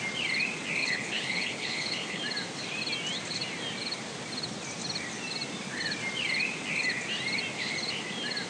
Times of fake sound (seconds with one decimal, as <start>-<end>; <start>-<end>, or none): 0.8-2.2